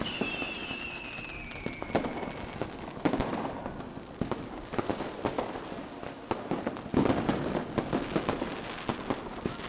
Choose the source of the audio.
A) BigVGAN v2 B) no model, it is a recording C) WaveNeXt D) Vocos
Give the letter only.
B